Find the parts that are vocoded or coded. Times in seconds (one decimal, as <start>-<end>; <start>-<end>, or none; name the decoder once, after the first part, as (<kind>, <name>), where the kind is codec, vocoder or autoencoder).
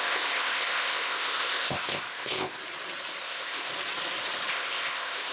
0.0-2.6 (codec, ZipCodec); 3.2-3.7; 4.5-5.3